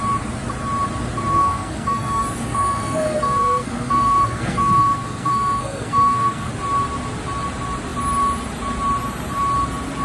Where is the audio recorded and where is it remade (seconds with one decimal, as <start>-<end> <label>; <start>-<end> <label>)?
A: 0.0-1.3 recorded; 1.3-6.5 remade; 6.5-10.0 recorded